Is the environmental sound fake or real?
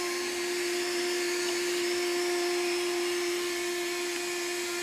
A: real